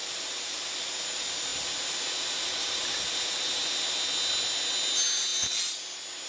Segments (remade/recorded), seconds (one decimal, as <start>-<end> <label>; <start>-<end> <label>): 0.0-6.3 recorded